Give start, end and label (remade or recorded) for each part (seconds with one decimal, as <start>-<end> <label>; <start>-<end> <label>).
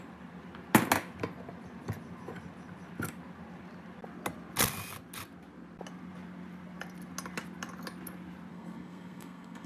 0.0-8.5 recorded; 8.5-9.7 remade